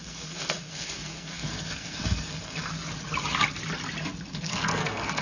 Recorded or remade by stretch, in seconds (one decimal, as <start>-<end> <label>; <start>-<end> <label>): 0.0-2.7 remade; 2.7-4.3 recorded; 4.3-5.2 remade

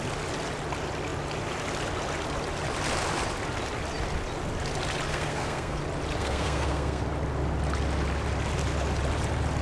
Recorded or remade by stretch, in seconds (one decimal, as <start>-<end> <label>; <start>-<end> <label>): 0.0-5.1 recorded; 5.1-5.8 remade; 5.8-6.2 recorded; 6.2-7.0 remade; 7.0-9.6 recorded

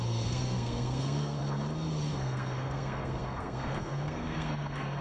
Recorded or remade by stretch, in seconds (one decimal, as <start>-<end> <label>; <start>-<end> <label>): 0.0-1.4 remade; 1.4-2.1 recorded; 2.1-5.0 remade

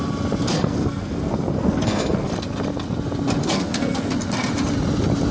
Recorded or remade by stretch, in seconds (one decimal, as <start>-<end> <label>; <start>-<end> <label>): 0.0-0.5 recorded; 0.5-2.3 remade; 2.3-3.4 recorded; 3.4-4.1 remade; 4.1-5.3 recorded